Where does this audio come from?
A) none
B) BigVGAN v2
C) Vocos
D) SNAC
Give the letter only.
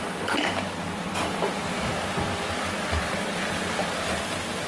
A